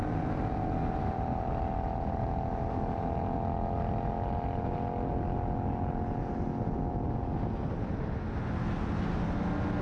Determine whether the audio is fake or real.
real